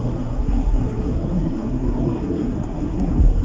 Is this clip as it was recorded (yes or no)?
no